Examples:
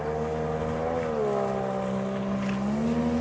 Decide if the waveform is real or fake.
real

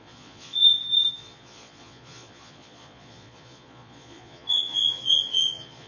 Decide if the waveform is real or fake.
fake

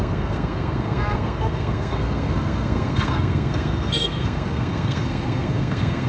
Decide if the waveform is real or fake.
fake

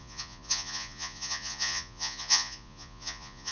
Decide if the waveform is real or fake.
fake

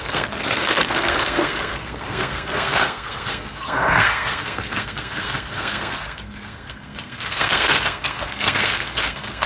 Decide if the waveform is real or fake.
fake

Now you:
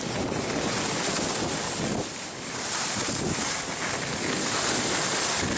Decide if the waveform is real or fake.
real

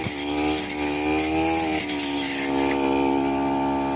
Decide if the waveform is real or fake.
real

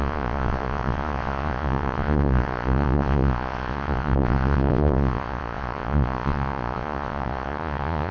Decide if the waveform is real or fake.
fake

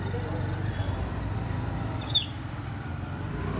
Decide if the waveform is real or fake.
real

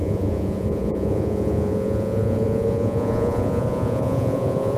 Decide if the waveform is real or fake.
fake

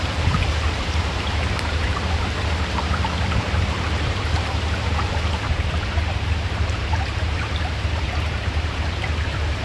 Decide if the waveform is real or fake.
fake